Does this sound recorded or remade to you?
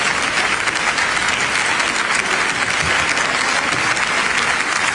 recorded